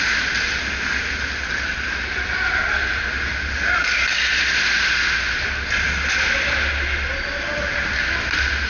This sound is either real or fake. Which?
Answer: real